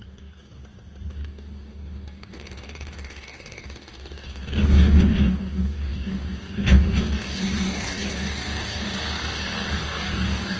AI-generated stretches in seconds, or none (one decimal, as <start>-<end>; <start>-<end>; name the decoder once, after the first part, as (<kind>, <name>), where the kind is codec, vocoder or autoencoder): 0.0-0.6 (codec, DAC); 1.1-8.9; 9.7-10.6